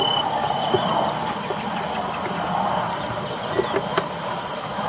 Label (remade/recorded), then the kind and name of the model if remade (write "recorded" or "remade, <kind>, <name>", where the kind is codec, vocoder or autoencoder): recorded